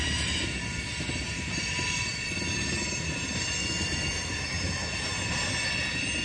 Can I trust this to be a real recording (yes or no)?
yes